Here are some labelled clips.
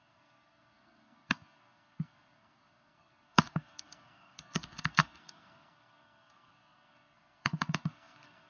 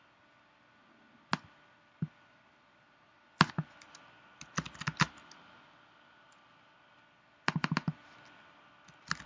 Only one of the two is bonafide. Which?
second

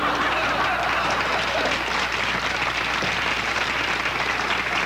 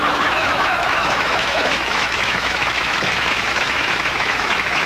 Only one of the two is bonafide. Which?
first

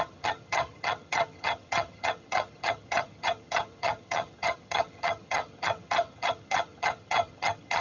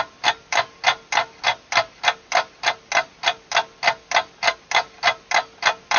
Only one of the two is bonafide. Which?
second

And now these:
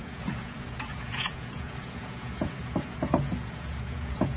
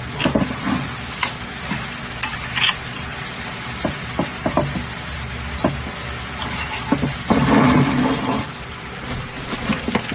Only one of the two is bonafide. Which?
second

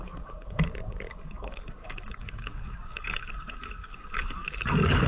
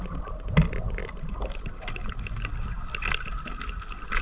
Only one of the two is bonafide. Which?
second